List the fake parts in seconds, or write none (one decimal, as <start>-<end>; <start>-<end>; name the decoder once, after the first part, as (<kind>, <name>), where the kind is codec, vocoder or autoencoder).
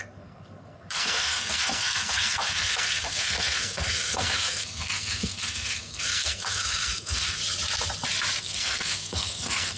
0.0-7.4 (codec, SNAC); 8.4-9.8